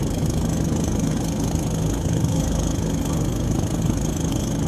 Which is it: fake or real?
fake